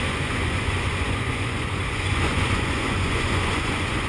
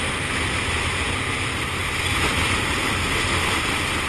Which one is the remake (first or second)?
first